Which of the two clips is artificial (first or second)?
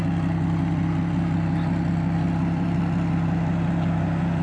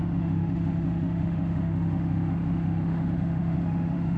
second